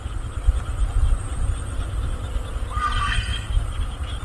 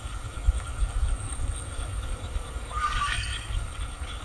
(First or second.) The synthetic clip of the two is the second